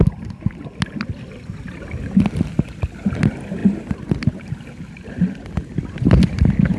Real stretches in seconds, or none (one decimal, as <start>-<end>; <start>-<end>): 0.0-6.8